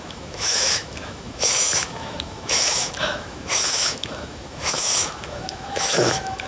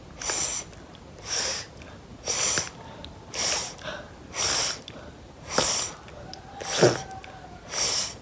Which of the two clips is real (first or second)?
second